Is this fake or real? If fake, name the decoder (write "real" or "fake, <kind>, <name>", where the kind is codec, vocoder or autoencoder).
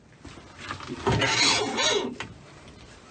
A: real